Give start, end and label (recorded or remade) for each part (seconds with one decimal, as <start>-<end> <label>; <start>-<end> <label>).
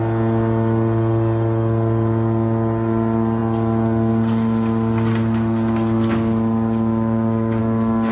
0.0-8.1 recorded